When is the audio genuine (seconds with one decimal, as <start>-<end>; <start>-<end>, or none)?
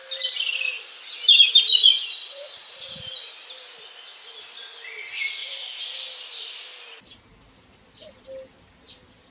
0.0-1.7; 3.3-9.3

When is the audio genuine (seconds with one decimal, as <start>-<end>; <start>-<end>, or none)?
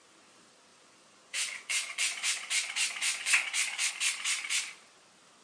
0.0-0.7; 3.9-5.4